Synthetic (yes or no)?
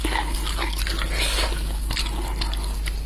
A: no